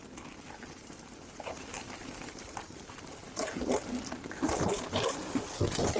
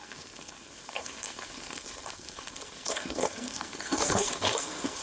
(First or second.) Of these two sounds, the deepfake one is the second